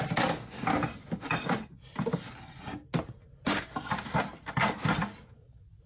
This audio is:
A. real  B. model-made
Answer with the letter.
A